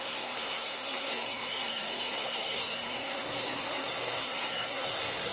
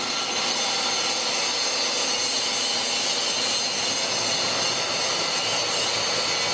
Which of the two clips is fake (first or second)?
first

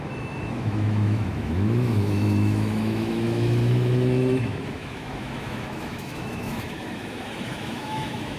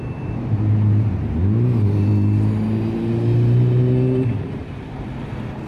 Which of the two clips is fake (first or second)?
first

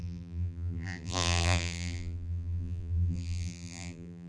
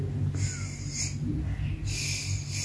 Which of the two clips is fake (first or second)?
first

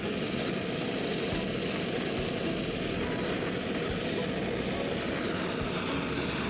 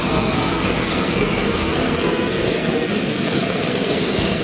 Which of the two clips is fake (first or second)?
second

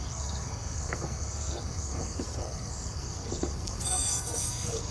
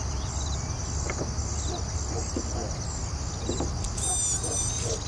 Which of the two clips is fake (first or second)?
first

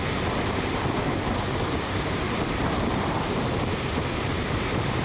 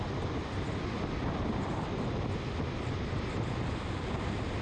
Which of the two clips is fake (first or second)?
first